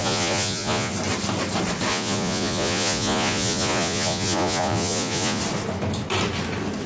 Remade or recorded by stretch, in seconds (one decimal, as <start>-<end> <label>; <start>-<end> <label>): 0.0-0.9 remade; 0.9-1.9 recorded; 1.9-5.4 remade; 5.4-6.9 recorded

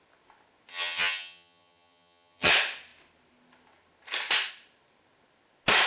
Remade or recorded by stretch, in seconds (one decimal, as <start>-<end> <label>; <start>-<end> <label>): 0.0-0.7 recorded; 0.7-2.5 remade; 2.5-5.9 recorded

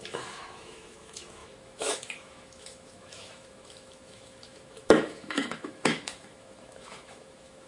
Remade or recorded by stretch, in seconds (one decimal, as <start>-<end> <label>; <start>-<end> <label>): 0.0-7.7 remade

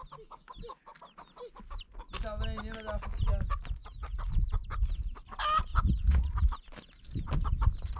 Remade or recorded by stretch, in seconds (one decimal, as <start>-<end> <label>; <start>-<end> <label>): 0.0-3.8 recorded; 3.8-4.3 remade; 4.3-5.7 recorded; 5.7-6.6 remade; 6.6-8.0 recorded

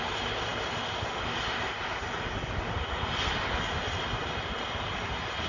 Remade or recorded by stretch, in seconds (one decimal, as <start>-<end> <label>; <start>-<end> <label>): 0.0-5.5 recorded

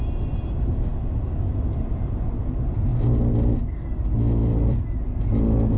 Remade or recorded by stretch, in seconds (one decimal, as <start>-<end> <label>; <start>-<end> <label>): 0.0-5.8 recorded

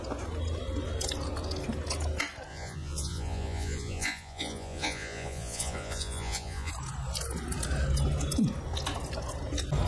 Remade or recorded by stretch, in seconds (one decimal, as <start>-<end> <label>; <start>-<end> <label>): 0.0-2.5 recorded; 2.5-6.7 remade; 6.7-9.9 recorded